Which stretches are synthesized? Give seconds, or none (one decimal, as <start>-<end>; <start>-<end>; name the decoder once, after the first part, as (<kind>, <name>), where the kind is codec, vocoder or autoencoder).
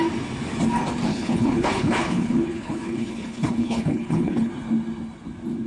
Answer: 1.1-4.5 (codec, HILCodec)